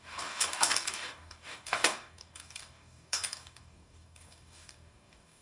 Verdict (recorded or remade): remade